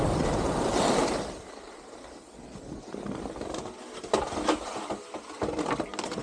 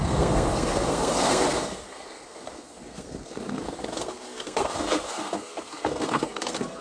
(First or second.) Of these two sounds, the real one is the first